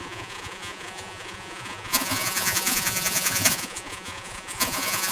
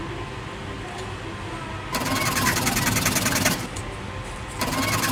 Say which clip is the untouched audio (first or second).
second